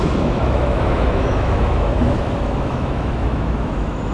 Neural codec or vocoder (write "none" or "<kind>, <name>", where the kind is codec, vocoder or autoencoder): autoencoder, DAC-VAE